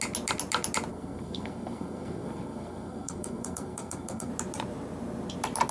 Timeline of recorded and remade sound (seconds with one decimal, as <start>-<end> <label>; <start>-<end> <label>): 0.0-0.9 recorded; 0.9-4.3 remade; 4.3-5.7 recorded